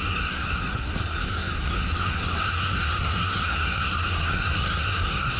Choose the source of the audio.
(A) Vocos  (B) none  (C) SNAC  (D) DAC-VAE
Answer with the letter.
C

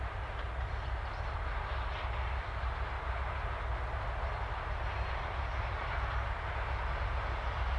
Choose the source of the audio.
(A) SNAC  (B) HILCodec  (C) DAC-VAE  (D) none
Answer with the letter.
D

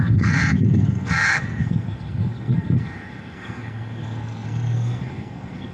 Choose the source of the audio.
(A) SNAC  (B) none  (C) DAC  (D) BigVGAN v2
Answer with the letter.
A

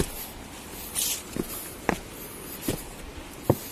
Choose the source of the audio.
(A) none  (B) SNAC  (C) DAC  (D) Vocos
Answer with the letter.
A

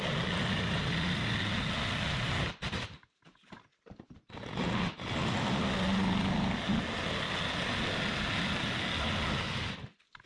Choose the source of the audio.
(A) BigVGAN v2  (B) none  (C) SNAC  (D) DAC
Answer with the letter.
B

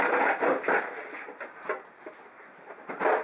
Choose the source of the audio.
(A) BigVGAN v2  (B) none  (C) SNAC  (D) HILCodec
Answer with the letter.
B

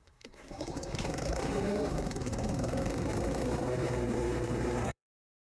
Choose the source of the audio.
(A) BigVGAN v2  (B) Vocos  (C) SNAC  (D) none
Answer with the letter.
C